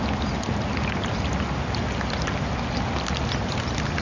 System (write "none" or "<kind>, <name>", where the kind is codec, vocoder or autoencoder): none